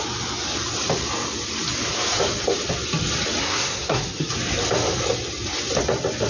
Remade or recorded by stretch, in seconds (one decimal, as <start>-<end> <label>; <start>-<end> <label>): 0.0-3.4 recorded; 3.4-4.3 remade; 4.3-6.3 recorded